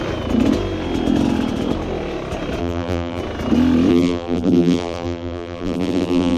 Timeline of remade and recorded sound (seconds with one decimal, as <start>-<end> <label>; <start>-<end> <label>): 0.0-2.6 recorded; 2.6-3.2 remade; 3.2-3.9 recorded; 3.9-6.4 remade